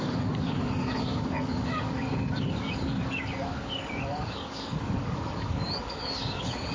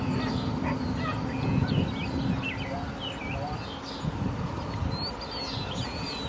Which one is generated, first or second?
first